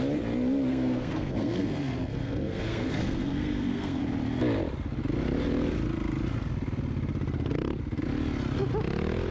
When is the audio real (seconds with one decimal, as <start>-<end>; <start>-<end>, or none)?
0.0-0.7; 4.0-9.3